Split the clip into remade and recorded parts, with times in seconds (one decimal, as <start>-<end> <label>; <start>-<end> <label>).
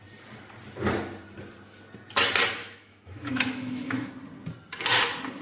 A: 0.0-2.6 recorded; 2.6-4.1 remade; 4.1-5.4 recorded